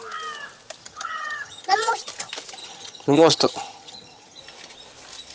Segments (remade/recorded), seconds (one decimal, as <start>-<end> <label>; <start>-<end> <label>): 0.0-0.8 recorded; 0.8-1.9 remade; 1.9-2.6 recorded; 2.6-4.4 remade; 4.4-5.3 recorded